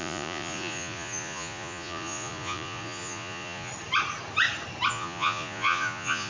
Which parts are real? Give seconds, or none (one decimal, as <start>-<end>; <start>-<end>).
3.7-4.9